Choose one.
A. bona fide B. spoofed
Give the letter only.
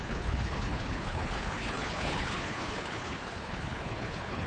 B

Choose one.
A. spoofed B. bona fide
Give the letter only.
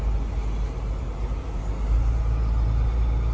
B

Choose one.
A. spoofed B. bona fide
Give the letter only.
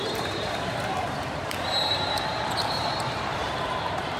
A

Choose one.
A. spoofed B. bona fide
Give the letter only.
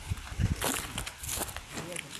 B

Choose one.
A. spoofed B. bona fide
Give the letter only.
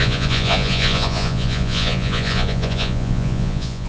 A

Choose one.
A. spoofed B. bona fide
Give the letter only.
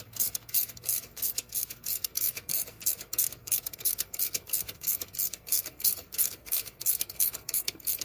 A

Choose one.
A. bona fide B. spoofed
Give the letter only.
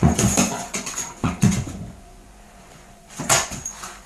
B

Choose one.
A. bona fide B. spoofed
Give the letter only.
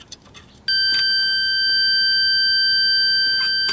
A